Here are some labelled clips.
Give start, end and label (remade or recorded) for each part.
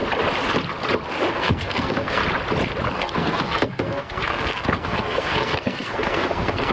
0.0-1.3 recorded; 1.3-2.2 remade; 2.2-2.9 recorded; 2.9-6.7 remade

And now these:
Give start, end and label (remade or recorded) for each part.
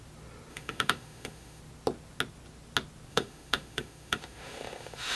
0.0-0.5 recorded; 0.5-1.6 remade; 1.6-3.1 recorded; 3.1-5.2 remade